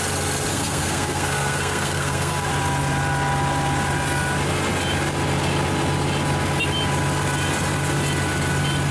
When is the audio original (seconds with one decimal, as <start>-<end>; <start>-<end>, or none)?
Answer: 0.0-0.5; 2.5-8.9